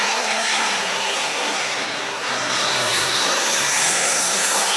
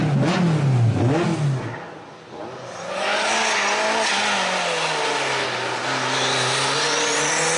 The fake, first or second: first